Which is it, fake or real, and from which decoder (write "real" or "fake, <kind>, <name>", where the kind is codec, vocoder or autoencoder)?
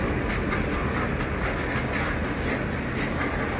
real